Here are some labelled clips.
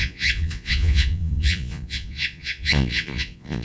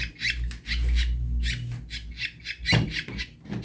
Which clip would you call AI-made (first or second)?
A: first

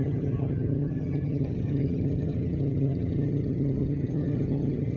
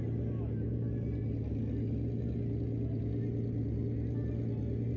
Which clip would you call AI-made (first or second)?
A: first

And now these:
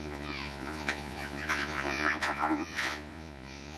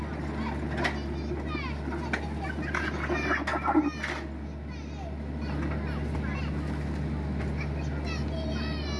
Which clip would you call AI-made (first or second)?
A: first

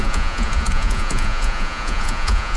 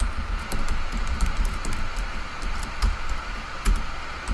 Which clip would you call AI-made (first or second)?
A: first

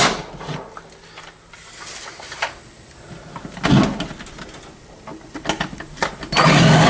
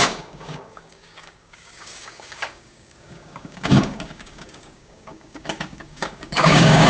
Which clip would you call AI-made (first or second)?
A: second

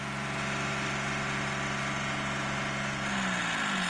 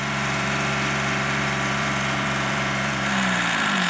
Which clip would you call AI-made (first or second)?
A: second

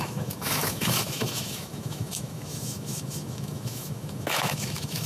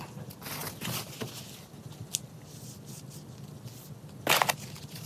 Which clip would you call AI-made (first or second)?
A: first